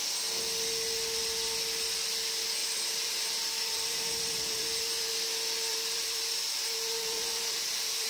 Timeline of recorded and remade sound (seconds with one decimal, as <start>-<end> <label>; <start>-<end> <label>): 0.0-2.6 recorded; 2.6-5.1 remade; 5.1-5.7 recorded; 5.7-8.1 remade